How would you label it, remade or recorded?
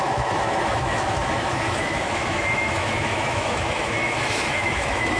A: remade